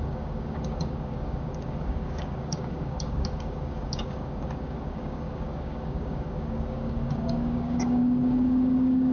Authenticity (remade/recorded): remade